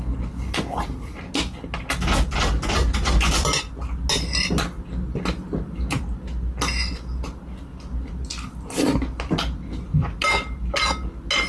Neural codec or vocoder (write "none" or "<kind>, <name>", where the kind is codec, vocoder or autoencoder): none